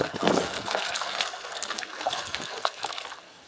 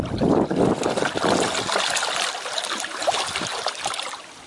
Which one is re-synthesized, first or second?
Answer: first